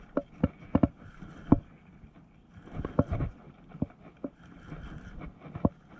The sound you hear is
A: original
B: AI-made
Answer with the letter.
A